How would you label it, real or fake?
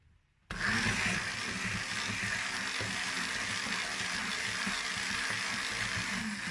real